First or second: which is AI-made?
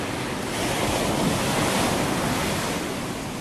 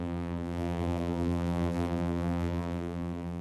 second